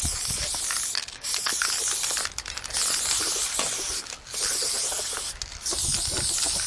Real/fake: real